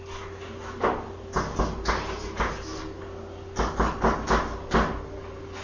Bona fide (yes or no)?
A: yes